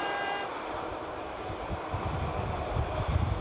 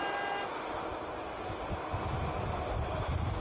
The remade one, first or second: first